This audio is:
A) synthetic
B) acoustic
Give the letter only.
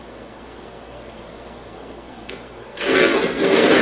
A